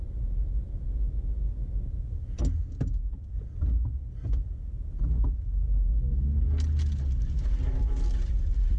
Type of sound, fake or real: real